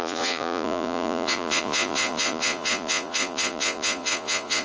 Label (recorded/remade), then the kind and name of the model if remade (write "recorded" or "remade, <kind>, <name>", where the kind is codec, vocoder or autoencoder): remade, vocoder, Vocos